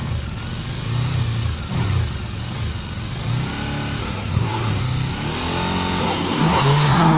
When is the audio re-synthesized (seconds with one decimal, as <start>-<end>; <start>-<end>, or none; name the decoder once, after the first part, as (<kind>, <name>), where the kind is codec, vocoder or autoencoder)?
4.0-4.7 (codec, SNAC); 6.0-7.2